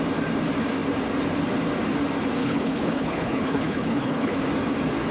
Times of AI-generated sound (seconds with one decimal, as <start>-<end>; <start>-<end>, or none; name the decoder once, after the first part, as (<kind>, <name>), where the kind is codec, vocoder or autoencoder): 2.4-4.4 (codec, HILCodec)